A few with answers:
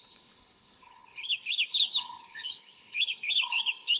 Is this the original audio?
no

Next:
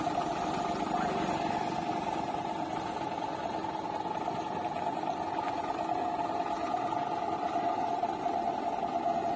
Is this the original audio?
yes